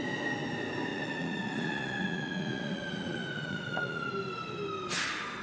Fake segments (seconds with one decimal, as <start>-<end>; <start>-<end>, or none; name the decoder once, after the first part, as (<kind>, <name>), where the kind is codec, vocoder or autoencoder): 0.9-4.1 (vocoder, Vocos)